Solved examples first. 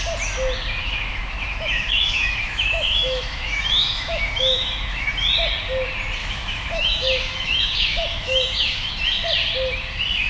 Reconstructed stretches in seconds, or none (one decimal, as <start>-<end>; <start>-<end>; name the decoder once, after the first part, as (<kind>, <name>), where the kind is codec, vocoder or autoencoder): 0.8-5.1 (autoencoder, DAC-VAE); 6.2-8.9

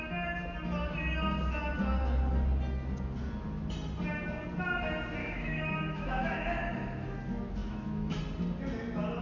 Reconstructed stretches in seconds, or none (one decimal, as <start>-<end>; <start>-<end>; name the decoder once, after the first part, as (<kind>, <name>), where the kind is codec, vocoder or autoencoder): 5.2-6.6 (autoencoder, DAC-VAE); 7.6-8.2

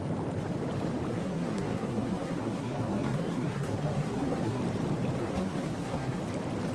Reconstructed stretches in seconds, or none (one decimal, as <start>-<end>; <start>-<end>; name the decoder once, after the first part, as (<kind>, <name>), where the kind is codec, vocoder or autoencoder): 1.1-4.6 (codec, SNAC); 5.2-6.2

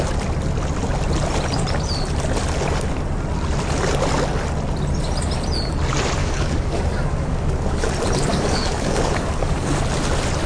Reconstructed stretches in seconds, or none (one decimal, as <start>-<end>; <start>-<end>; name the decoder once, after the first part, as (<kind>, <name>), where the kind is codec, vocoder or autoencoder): 6.2-7.9 (codec, DAC); 8.3-9.8

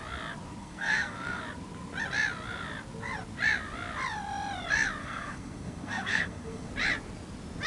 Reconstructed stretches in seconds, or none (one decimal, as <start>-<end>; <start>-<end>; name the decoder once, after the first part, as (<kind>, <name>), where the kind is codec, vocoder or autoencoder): 0.6-1.4 (codec, SNAC); 5.0-6.7

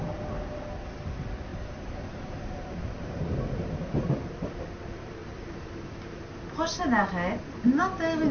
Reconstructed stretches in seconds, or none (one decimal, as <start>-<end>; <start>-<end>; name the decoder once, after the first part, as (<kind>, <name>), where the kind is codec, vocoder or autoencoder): 1.5-3.2 (vocoder, BigVGAN v2); 5.2-5.7